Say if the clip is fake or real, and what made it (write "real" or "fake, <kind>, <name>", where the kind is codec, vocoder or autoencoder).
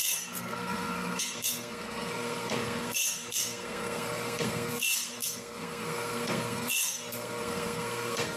fake, codec, SNAC